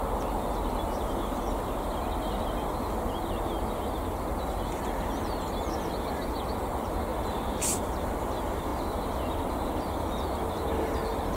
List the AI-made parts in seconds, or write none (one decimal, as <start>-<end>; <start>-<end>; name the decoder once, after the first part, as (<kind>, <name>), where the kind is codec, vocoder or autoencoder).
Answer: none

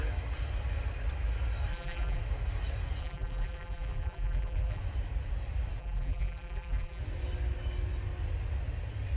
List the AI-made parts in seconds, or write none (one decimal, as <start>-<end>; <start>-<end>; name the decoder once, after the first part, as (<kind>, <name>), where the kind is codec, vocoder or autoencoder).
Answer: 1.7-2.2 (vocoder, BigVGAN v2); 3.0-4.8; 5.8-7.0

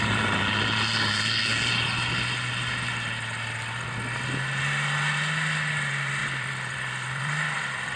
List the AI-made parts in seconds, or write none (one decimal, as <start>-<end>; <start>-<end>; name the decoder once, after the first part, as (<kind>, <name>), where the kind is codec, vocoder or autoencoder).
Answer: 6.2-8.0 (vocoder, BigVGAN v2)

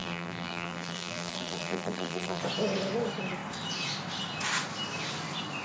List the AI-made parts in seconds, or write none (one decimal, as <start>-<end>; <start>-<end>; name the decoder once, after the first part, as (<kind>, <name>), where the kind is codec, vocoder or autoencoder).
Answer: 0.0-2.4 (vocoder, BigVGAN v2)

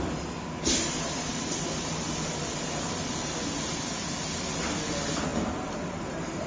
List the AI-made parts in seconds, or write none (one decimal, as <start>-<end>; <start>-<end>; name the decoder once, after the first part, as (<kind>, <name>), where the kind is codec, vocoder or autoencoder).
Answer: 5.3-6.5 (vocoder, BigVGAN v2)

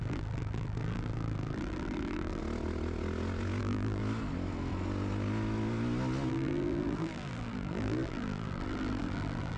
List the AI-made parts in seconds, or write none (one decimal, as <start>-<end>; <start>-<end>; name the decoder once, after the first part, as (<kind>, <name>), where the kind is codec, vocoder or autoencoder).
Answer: 0.0-2.4 (vocoder, BigVGAN v2); 3.6-4.0; 6.3-9.6

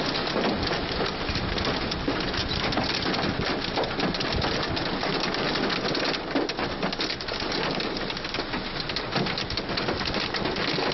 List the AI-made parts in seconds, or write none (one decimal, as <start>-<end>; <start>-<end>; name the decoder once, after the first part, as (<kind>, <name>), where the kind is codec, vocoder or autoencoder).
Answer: none